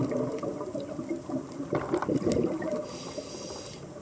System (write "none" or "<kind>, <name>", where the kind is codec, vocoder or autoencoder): none